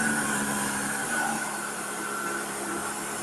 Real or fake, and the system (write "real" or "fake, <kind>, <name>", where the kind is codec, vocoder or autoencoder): fake, vocoder, BigVGAN v2